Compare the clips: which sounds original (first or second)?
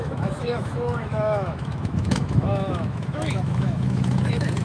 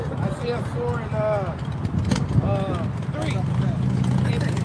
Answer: second